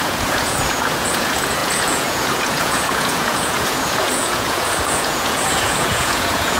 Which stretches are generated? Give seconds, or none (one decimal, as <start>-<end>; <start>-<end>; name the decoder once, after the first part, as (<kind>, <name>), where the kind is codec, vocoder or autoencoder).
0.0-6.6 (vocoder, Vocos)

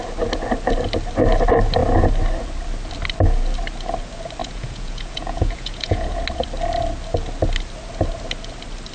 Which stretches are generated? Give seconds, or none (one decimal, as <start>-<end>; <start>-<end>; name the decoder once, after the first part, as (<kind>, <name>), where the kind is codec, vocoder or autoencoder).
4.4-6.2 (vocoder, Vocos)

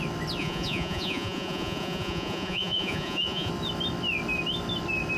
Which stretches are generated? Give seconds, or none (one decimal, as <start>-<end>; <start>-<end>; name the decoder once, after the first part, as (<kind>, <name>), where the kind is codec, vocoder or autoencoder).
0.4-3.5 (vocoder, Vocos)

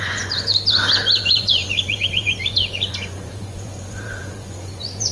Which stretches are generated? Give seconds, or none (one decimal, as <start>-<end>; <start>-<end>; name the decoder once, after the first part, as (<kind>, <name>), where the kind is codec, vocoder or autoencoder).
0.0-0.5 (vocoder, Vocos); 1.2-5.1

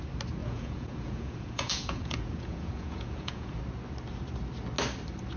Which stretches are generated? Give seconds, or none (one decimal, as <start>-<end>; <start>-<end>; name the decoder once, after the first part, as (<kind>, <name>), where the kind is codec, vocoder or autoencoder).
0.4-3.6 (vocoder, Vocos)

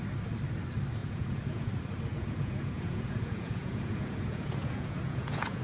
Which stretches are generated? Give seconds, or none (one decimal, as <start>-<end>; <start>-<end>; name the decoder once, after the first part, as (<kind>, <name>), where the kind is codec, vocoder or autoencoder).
1.0-1.7 (vocoder, Vocos); 2.1-5.6

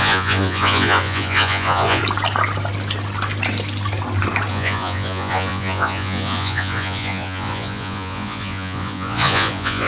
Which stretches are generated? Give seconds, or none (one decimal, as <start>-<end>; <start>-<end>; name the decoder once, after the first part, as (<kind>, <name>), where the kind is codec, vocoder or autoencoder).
0.0-2.0 (vocoder, Vocos); 4.5-9.9

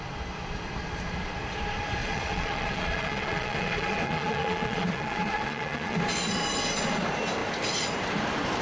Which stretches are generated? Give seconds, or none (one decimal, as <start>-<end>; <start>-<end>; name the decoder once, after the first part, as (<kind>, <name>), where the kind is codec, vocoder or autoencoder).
2.0-6.0 (vocoder, Vocos)